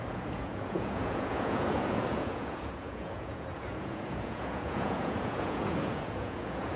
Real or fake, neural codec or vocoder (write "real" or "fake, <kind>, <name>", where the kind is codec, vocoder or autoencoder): fake, vocoder, Vocos